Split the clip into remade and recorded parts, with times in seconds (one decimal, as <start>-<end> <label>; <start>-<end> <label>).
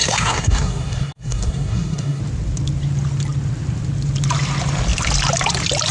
0.0-2.2 remade; 2.2-5.9 recorded